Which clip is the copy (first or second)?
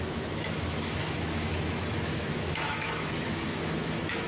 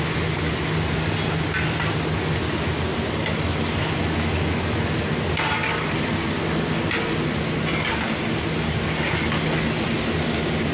first